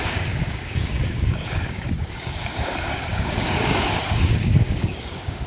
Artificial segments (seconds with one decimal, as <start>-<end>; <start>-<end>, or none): 0.0-5.5